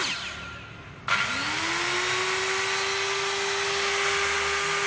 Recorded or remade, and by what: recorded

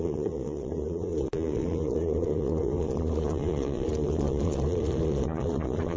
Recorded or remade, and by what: remade, vocoder, Vocos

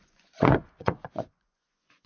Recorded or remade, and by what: remade, vocoder, Vocos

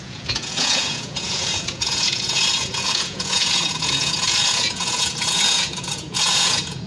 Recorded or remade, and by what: remade, vocoder, Vocos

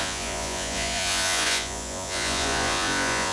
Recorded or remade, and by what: remade, vocoder, Vocos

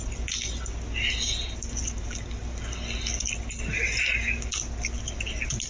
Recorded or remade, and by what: recorded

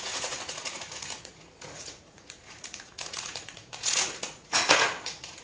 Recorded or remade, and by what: remade, vocoder, Vocos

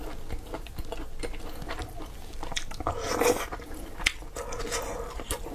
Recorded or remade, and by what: recorded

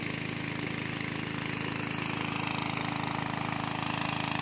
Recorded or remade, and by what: recorded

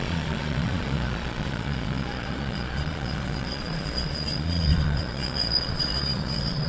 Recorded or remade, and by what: remade, vocoder, Vocos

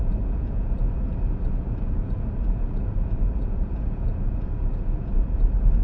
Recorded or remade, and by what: remade, vocoder, Vocos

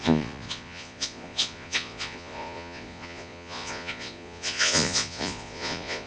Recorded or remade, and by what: remade, vocoder, Vocos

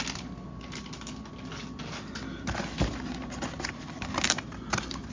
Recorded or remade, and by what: recorded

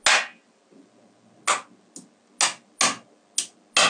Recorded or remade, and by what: recorded